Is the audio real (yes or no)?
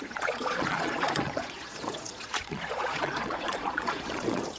no